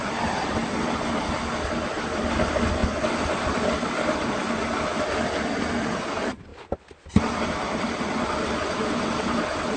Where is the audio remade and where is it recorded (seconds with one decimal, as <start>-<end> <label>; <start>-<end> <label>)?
0.0-9.8 recorded